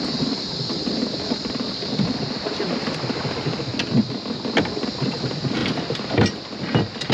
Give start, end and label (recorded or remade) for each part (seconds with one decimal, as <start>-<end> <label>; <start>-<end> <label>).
0.0-7.1 recorded